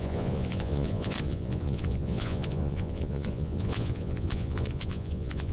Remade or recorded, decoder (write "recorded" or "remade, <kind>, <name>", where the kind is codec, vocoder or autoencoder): remade, vocoder, Vocos